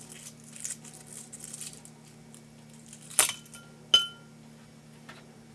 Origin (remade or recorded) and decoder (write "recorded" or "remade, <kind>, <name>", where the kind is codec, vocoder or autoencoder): recorded